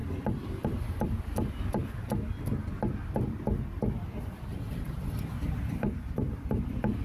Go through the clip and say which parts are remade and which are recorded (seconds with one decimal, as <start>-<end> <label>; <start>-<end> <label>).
0.0-7.0 recorded